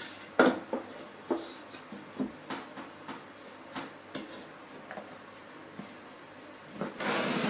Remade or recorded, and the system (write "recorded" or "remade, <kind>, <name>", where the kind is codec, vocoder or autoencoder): recorded